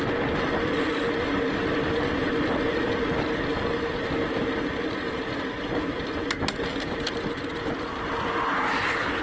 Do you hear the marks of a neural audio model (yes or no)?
no